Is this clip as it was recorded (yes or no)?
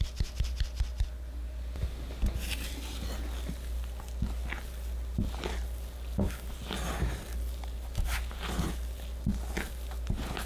yes